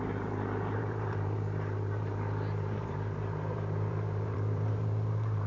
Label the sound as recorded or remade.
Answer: remade